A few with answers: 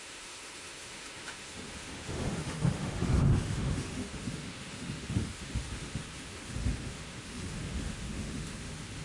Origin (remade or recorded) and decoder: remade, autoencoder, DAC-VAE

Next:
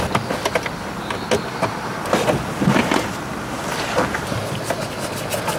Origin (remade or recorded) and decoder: recorded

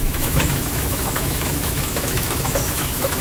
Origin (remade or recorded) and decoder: remade, autoencoder, DAC-VAE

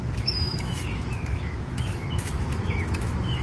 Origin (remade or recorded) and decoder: remade, autoencoder, DAC-VAE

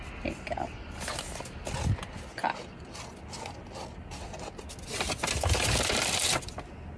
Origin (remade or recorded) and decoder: recorded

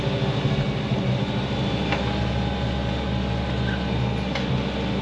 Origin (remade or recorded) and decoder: recorded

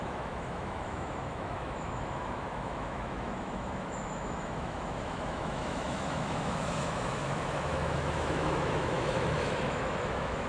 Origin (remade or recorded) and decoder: remade, autoencoder, DAC-VAE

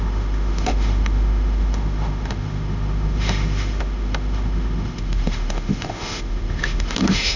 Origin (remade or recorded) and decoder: remade, autoencoder, DAC-VAE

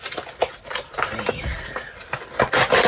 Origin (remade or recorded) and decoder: recorded